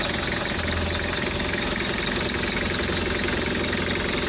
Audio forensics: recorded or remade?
recorded